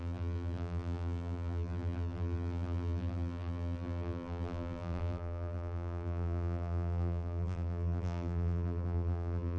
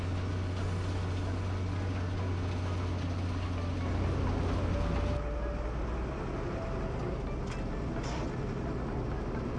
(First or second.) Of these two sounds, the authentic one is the second